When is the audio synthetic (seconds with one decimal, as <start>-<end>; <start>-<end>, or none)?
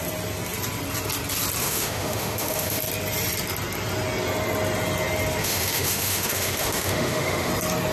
1.6-2.8; 5.4-7.5